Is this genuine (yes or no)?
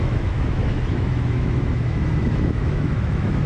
no